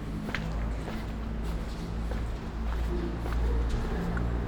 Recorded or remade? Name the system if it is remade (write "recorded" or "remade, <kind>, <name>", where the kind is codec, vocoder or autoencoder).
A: recorded